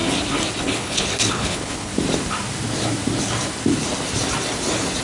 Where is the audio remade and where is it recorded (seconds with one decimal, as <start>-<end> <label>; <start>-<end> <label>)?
0.0-0.6 recorded; 0.6-1.9 remade; 1.9-5.0 recorded